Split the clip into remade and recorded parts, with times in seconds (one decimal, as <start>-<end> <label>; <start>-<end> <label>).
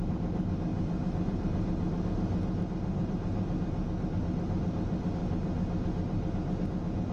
0.0-7.1 recorded